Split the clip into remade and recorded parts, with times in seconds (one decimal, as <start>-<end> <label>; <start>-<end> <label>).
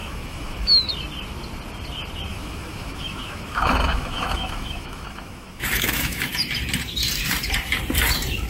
0.0-0.9 remade; 0.9-2.3 recorded; 2.3-6.3 remade; 6.3-8.5 recorded